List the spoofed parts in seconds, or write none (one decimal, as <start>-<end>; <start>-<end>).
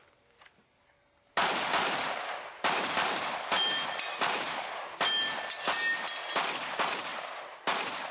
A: none